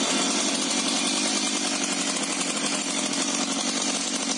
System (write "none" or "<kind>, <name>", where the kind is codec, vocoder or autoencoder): none